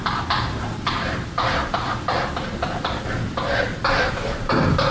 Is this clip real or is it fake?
real